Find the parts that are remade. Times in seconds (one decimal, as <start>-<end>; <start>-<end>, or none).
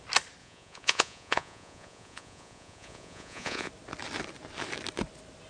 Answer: 0.4-3.7